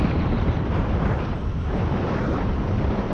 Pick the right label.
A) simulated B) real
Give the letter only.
A